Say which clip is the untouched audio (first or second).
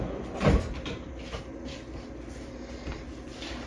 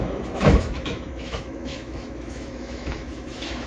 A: first